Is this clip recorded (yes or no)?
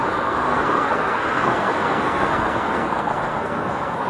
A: no